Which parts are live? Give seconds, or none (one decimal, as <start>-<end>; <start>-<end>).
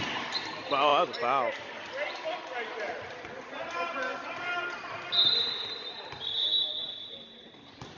0.0-8.0